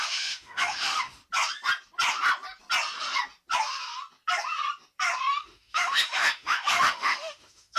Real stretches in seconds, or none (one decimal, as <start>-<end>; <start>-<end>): 1.2-5.3